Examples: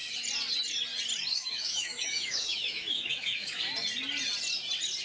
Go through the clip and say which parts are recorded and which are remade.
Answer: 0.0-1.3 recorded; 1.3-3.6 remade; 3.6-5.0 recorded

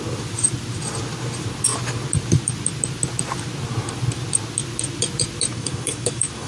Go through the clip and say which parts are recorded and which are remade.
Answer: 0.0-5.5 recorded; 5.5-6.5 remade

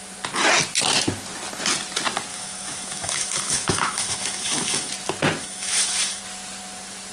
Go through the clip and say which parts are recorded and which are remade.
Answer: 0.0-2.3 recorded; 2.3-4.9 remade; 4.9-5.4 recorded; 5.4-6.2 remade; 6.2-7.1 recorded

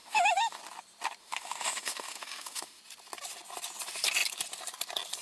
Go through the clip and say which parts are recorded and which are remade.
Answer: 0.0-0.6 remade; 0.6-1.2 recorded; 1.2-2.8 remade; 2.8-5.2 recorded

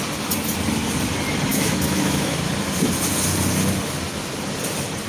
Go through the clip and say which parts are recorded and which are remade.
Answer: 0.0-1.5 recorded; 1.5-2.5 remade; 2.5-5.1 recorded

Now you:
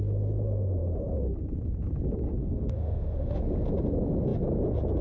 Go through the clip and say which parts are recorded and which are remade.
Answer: 0.0-2.4 recorded; 2.4-3.4 remade; 3.4-5.0 recorded